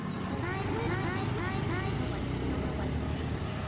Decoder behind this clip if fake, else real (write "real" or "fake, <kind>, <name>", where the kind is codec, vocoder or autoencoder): real